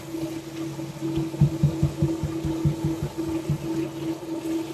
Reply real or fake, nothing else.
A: real